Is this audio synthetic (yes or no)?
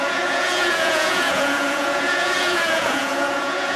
yes